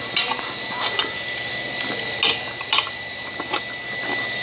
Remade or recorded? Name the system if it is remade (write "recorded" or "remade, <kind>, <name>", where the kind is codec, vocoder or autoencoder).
recorded